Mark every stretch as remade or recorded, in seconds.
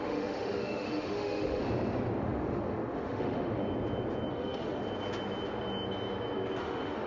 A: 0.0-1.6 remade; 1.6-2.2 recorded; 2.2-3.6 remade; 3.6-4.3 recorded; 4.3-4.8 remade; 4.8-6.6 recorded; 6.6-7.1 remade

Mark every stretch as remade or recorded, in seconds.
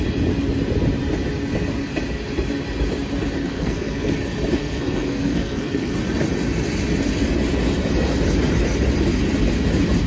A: 0.0-3.4 recorded; 3.4-4.1 remade; 4.1-4.6 recorded; 4.6-5.9 remade; 5.9-10.1 recorded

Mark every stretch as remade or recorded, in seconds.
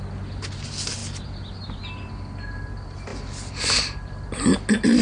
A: 0.0-5.0 recorded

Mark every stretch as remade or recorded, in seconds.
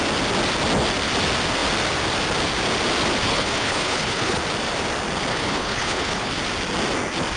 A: 0.0-3.3 recorded; 3.3-4.4 remade; 4.4-5.3 recorded; 5.3-6.3 remade; 6.3-7.4 recorded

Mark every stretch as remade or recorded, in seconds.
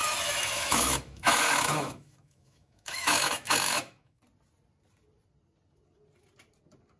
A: 0.0-4.2 remade; 4.2-7.0 recorded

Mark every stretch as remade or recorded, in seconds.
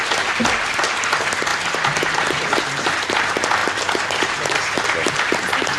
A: 0.0-5.8 recorded